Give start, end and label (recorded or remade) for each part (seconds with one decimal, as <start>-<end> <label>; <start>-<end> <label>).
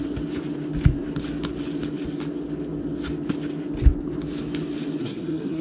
0.0-5.0 recorded; 5.0-5.6 remade